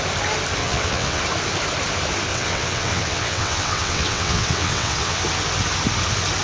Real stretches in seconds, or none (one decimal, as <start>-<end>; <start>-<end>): 0.0-0.6; 1.2-2.3; 5.2-6.4